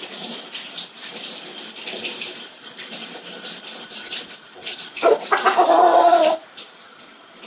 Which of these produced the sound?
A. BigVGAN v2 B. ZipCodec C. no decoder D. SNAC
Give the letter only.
A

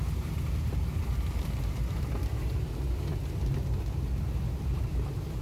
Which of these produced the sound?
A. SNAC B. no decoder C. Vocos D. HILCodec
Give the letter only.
B